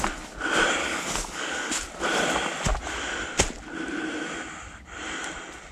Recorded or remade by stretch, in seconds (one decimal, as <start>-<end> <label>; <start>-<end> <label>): 0.0-0.8 recorded; 0.8-1.7 remade; 1.7-5.7 recorded